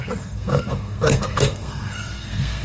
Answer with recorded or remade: remade